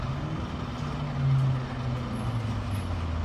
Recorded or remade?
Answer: recorded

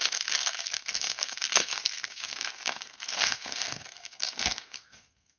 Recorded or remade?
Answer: remade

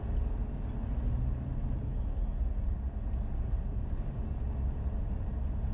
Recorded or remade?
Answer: recorded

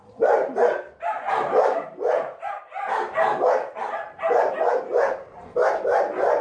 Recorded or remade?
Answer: recorded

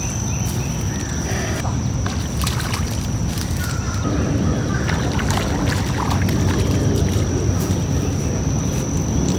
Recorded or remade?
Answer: recorded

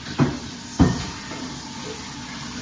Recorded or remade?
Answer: recorded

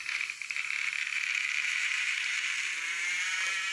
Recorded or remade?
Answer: remade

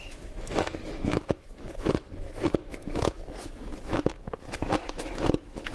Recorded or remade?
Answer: remade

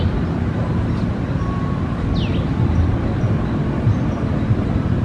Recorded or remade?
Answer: recorded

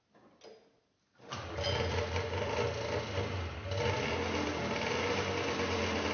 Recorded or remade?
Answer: recorded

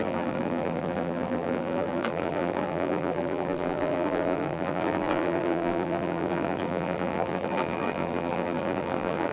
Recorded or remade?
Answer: remade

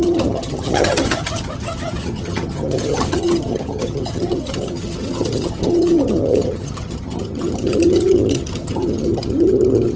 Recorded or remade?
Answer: remade